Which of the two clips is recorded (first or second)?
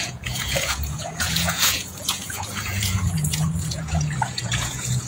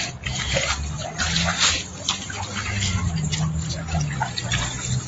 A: second